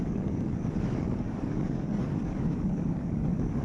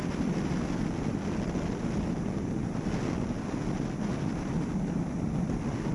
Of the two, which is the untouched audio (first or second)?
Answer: second